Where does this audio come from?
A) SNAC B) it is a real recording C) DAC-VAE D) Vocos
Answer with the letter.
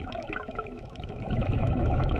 C